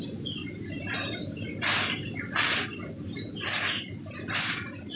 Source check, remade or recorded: recorded